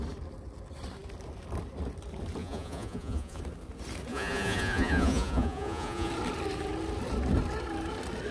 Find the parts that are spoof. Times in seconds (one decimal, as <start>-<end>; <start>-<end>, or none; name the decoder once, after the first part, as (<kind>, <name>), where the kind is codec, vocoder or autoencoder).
2.4-3.4 (vocoder, Vocos); 4.1-6.1